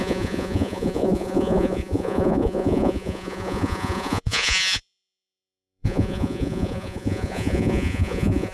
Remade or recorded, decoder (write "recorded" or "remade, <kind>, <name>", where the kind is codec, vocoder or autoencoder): remade, vocoder, Vocos